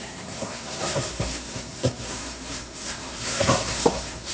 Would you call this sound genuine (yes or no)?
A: no